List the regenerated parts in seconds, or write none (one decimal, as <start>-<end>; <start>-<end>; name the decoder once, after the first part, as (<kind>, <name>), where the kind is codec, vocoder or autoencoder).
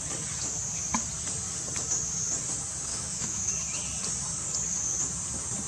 2.9-3.5 (autoencoder, DAC-VAE)